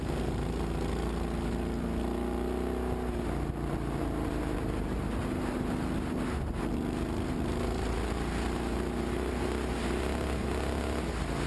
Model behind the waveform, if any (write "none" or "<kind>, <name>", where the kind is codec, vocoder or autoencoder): none